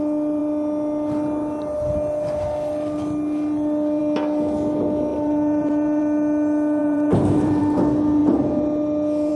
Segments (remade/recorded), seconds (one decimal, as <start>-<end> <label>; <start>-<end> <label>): 0.0-5.1 recorded; 5.1-6.0 remade; 6.0-6.8 recorded; 6.8-7.6 remade; 7.6-9.3 recorded